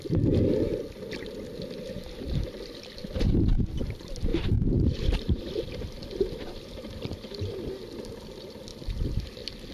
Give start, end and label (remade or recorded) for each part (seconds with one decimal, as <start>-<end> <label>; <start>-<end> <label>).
0.0-4.3 recorded; 4.3-5.4 remade; 5.4-9.7 recorded